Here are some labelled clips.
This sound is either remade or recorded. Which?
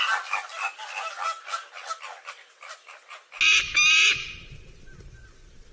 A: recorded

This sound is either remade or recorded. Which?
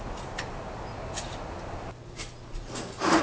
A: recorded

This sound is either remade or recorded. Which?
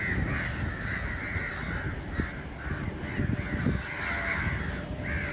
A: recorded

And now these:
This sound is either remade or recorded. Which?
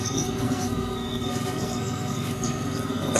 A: remade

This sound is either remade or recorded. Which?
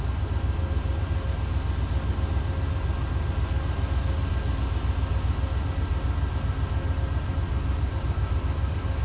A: recorded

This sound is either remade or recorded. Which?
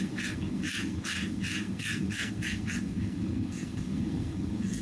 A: remade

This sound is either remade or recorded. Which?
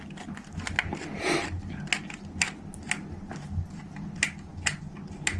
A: recorded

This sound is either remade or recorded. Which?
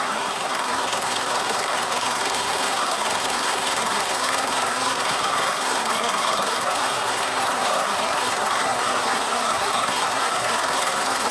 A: remade